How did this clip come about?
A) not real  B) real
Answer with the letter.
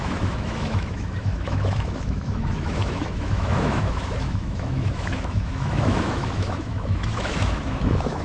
A